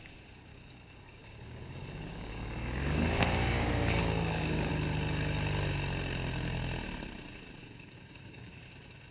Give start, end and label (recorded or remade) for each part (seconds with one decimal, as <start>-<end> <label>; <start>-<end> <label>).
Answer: 0.0-0.5 recorded; 0.5-4.7 remade; 4.7-7.6 recorded; 7.6-8.6 remade; 8.6-9.1 recorded